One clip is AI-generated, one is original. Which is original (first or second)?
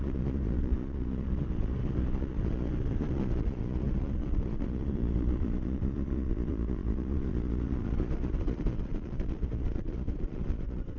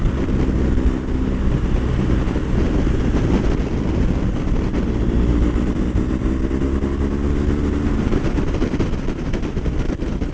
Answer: second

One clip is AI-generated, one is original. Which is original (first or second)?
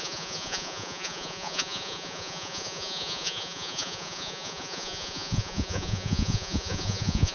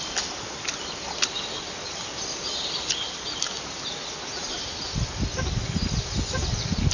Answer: second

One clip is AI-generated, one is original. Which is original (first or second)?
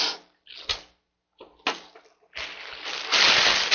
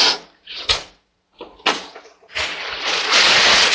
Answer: first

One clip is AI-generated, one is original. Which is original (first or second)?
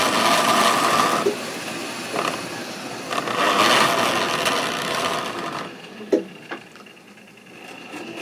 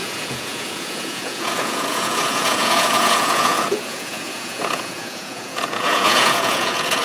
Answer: first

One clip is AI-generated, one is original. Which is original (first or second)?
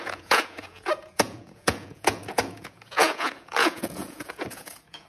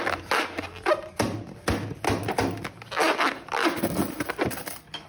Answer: second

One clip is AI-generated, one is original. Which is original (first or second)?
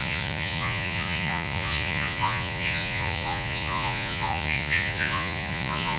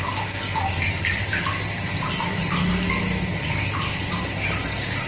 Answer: second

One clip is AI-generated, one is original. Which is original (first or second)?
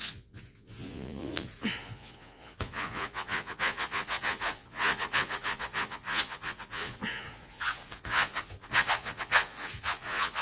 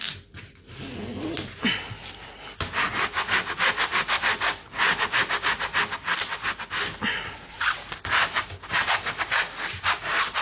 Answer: second